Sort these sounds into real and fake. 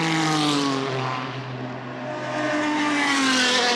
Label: real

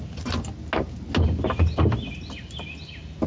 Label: real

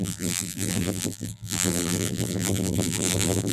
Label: fake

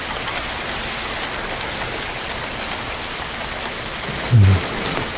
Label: real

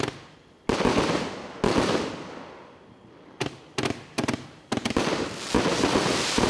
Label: real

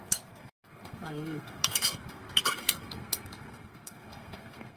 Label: fake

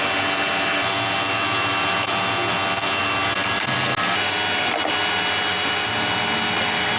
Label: real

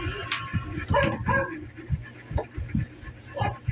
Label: real